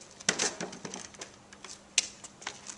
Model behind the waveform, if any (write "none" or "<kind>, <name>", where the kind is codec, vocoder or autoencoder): none